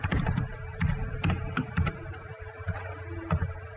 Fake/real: fake